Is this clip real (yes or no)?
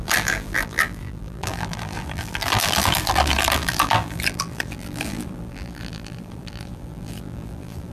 no